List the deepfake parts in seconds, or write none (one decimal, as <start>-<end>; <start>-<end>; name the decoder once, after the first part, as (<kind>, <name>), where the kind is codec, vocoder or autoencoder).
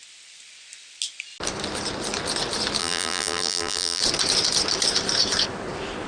2.8-4.0 (vocoder, BigVGAN v2)